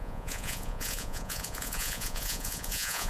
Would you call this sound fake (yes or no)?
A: yes